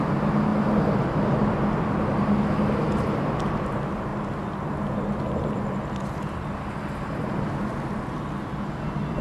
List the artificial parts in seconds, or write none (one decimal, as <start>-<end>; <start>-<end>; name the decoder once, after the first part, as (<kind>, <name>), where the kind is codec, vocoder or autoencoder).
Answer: none